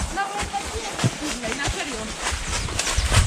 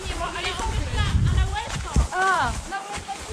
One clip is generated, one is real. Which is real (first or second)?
first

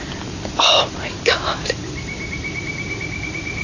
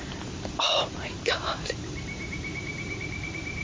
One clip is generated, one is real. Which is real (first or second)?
first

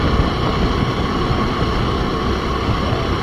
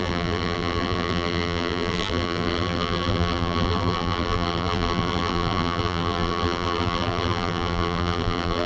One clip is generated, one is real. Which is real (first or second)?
first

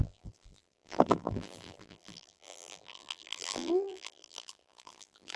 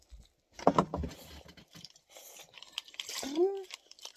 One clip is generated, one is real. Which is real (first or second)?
second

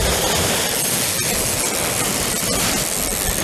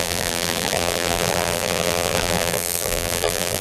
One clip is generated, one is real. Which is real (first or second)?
first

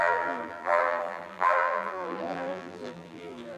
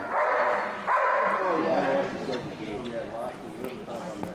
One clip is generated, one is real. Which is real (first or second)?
second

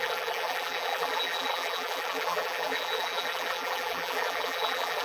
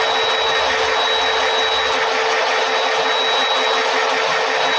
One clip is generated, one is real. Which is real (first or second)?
second